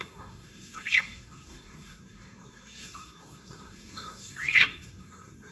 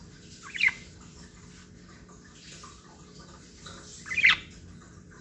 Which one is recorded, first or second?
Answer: second